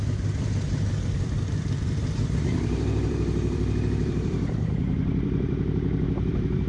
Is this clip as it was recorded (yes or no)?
no